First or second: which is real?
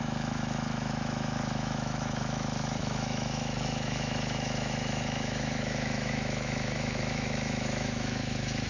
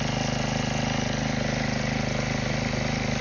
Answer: second